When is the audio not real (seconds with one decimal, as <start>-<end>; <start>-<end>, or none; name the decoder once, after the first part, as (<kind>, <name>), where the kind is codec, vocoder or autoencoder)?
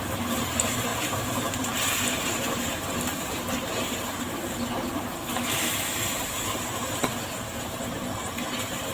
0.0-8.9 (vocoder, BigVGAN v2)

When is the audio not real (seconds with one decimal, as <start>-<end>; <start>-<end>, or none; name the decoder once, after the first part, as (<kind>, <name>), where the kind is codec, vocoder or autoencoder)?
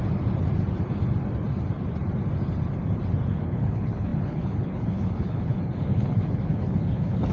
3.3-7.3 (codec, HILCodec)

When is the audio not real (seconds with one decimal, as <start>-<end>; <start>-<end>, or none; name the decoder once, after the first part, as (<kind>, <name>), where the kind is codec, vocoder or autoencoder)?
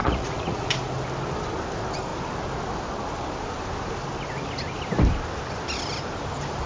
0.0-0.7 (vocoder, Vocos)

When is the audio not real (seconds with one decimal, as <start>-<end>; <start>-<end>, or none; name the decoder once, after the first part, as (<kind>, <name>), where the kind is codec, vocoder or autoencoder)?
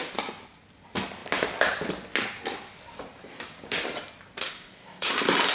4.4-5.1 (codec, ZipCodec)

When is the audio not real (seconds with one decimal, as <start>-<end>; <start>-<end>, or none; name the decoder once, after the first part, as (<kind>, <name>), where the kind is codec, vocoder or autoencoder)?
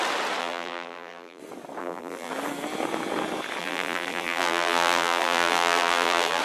0.4-1.4 (vocoder, BigVGAN v2); 1.8-2.3; 3.6-6.4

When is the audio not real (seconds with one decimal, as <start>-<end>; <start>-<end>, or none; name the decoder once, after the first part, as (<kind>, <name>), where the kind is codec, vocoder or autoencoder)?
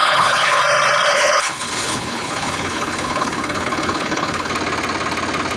0.0-0.6 (codec, HILCodec); 1.1-4.5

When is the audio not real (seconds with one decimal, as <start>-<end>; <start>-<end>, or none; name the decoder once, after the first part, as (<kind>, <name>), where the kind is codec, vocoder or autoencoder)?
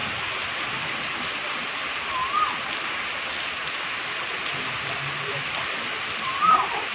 3.9-6.9 (vocoder, BigVGAN v2)